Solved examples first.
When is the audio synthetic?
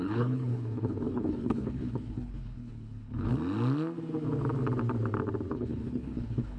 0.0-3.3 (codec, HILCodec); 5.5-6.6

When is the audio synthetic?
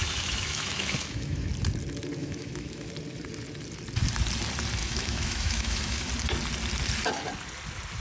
0.0-1.5 (autoencoder, DAC-VAE); 2.2-2.9; 4.8-6.1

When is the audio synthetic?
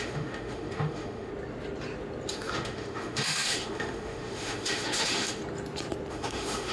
0.0-1.3 (autoencoder, DAC-VAE); 2.3-5.4; 6.1-6.7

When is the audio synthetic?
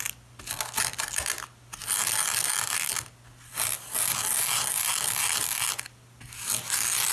none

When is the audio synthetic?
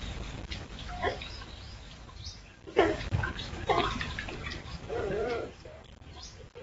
0.0-6.6 (codec, DAC)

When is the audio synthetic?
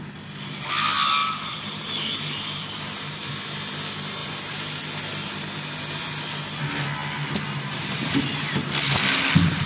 1.2-3.3 (vocoder, BigVGAN v2); 4.2-4.7